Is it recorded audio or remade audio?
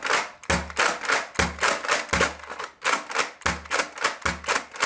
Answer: recorded